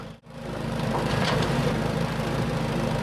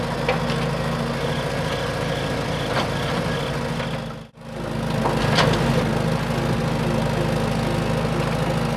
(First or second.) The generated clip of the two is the first